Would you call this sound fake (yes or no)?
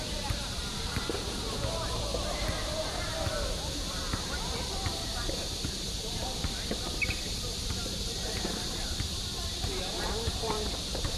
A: yes